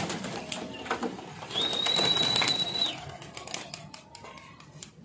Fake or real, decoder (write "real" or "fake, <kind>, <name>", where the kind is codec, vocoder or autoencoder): real